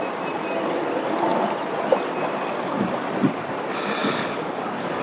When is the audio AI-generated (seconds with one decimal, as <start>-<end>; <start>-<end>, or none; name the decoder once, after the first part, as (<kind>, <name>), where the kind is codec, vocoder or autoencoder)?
4.0-5.0 (codec, DAC)